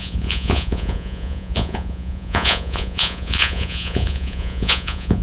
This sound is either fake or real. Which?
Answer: fake